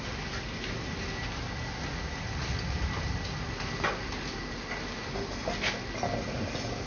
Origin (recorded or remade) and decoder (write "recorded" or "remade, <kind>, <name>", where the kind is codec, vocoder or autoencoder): recorded